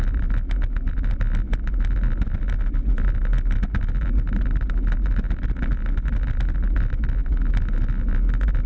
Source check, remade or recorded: recorded